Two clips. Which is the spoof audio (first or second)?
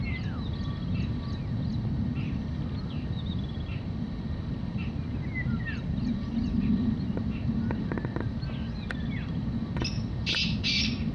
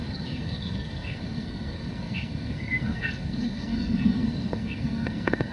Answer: second